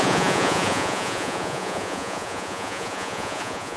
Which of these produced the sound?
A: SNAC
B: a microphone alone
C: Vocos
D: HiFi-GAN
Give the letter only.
C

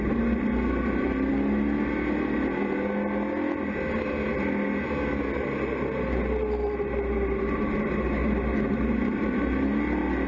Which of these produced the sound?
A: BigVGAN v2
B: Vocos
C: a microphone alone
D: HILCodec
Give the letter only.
C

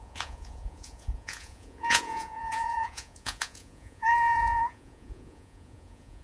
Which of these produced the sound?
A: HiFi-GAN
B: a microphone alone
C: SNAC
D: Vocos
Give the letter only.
D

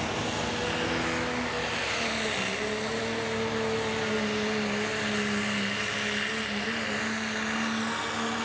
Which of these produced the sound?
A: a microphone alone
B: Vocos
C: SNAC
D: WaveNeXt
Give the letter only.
A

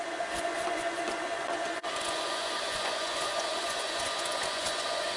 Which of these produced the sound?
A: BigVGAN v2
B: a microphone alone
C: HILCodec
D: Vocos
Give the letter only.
D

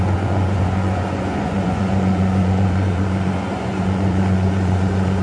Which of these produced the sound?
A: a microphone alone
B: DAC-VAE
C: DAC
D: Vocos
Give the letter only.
D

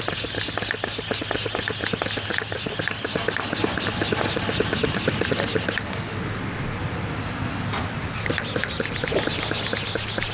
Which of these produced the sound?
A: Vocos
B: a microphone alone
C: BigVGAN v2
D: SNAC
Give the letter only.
B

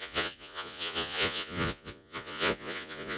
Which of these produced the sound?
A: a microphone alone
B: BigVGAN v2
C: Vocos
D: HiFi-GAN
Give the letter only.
C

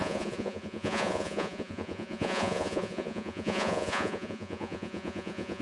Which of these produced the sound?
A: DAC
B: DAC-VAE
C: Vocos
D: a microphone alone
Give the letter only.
C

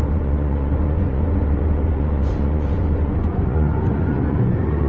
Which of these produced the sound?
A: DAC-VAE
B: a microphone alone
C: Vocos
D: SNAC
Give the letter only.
C